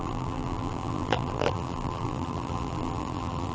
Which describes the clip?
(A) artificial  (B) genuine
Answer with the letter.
A